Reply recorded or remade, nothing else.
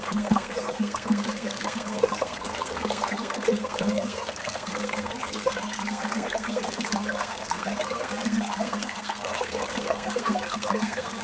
remade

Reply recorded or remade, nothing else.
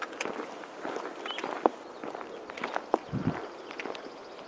recorded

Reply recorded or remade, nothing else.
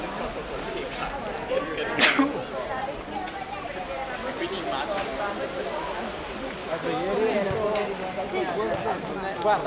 recorded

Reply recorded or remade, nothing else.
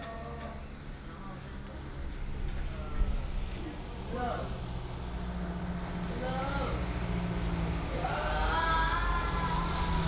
recorded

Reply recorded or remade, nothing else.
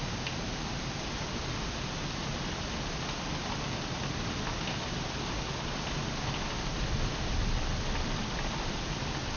recorded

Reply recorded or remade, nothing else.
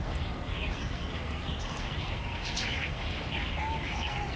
remade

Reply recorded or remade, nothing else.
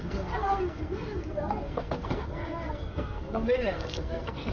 remade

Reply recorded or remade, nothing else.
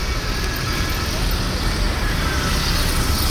recorded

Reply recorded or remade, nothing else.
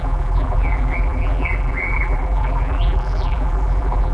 remade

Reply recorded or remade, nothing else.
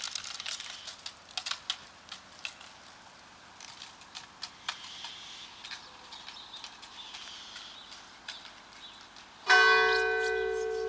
recorded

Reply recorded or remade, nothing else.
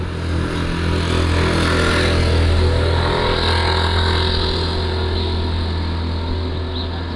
recorded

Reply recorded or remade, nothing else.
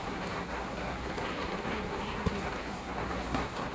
remade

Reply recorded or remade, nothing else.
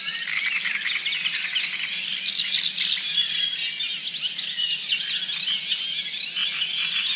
recorded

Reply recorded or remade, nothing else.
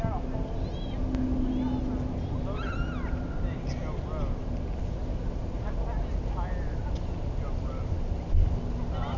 recorded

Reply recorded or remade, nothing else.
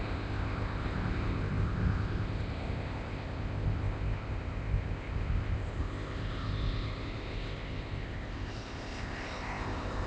remade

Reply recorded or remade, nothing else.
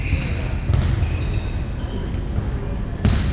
recorded